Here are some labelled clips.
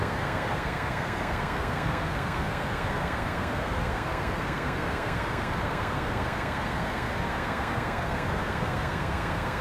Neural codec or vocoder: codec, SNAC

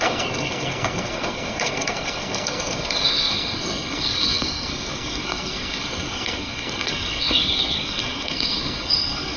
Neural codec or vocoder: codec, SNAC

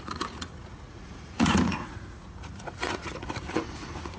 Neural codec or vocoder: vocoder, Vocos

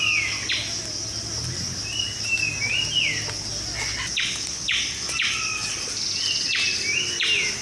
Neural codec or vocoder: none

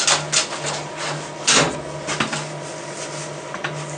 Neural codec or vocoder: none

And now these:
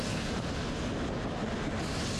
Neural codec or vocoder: none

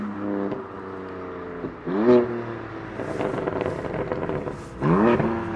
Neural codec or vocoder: none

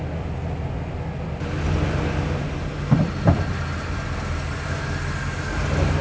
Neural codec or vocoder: none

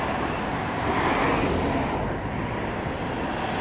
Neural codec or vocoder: none